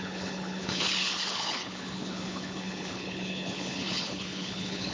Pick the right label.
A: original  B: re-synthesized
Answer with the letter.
B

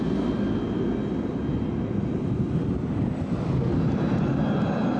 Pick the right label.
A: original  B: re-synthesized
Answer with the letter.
A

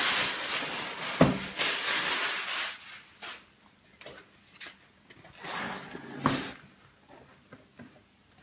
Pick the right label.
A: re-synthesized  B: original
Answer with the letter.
B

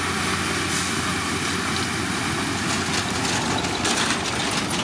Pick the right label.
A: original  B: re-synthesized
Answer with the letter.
A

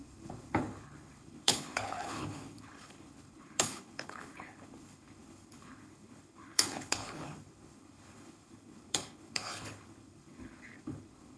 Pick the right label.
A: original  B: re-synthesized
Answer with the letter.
B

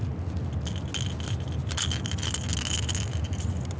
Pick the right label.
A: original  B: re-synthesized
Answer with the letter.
A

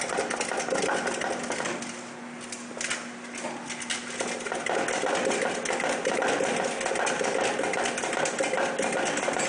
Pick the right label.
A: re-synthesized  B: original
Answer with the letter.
B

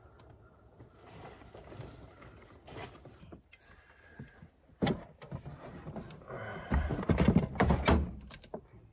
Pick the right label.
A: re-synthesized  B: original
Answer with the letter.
B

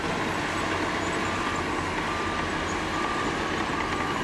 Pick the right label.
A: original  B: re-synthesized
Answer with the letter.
A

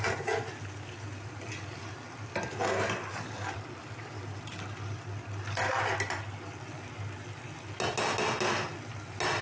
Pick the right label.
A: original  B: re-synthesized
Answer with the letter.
A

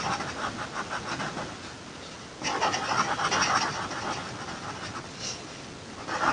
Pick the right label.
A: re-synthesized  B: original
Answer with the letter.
B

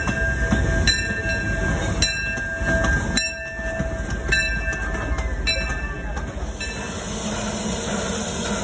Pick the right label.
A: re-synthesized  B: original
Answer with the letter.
B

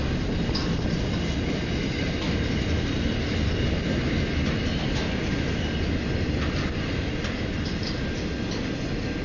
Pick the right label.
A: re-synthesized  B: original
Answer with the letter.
B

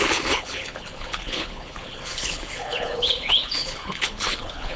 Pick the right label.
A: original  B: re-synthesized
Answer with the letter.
B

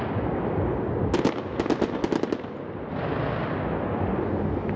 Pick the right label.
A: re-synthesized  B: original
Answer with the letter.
B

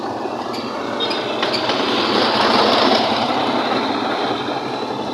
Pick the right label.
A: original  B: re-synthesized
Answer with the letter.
A